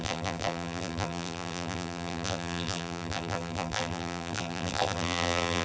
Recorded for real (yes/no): no